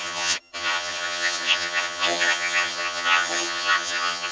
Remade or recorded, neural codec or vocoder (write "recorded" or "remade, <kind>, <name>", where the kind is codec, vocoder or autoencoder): remade, vocoder, HiFi-GAN